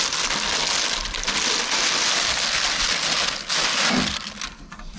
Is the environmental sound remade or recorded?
recorded